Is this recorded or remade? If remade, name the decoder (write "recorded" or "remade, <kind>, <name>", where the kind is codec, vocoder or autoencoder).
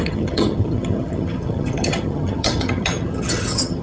remade, vocoder, HiFi-GAN